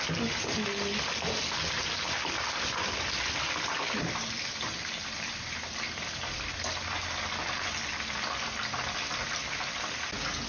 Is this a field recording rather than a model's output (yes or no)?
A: yes